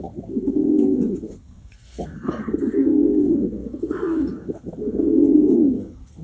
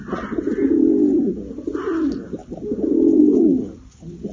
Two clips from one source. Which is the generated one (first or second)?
first